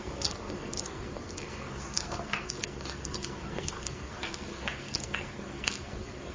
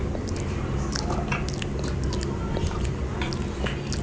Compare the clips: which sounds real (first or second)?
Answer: second